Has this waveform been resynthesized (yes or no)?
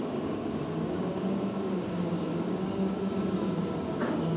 yes